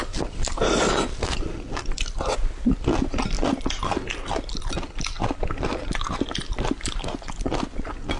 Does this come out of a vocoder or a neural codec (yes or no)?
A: no